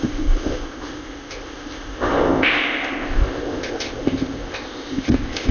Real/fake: fake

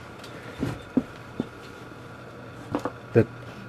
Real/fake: fake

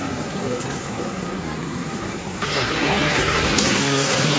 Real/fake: fake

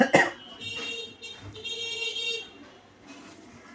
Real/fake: fake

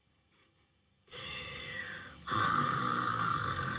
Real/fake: fake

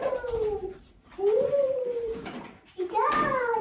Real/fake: fake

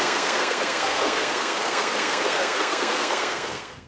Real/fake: fake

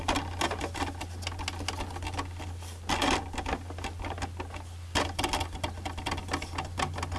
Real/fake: real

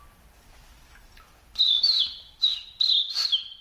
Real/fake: real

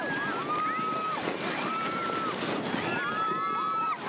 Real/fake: real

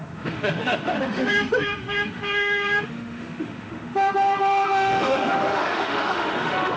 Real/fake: fake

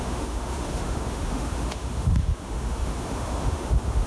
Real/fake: fake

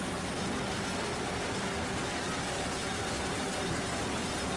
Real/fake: real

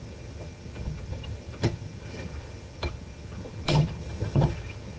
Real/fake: fake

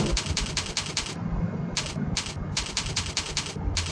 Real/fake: real